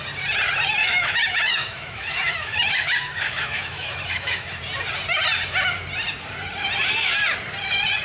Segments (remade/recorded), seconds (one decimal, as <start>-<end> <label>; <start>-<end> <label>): 0.0-0.8 recorded; 0.8-4.6 remade; 4.6-8.0 recorded